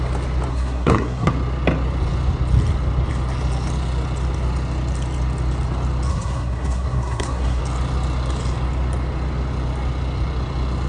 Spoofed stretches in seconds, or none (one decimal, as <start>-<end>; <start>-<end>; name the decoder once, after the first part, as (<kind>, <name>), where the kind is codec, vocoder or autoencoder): 0.5-1.3 (codec, SNAC); 6.1-7.6